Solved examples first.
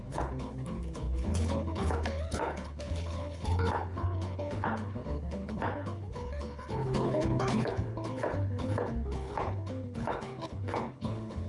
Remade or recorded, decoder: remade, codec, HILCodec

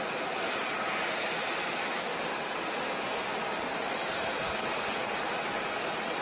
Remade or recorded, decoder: recorded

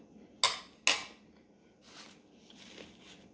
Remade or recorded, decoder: recorded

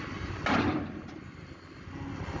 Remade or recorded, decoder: recorded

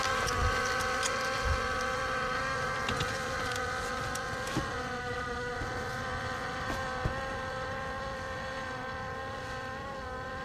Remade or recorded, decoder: recorded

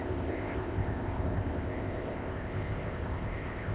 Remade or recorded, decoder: remade, codec, ZipCodec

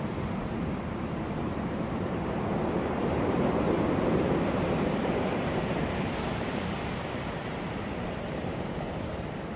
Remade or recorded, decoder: remade, vocoder, BigVGAN v2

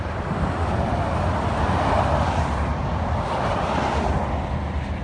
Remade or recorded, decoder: recorded